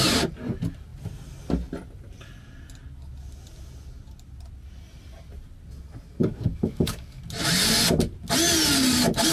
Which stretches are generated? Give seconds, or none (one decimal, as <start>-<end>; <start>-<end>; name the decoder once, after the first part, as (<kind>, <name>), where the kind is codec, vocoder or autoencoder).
6.2-7.2 (codec, DAC)